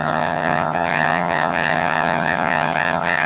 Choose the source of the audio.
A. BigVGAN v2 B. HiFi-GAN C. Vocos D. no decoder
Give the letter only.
B